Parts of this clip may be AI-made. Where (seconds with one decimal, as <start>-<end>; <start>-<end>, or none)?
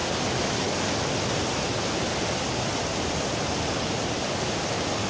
none